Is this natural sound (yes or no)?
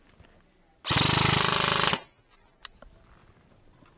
yes